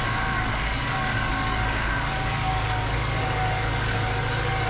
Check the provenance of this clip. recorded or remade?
remade